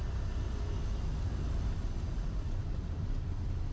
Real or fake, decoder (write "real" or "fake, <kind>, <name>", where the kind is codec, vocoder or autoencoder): real